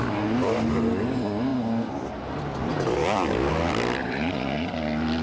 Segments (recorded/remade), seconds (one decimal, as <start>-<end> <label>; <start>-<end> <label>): 0.0-4.0 recorded; 4.0-4.7 remade; 4.7-5.2 recorded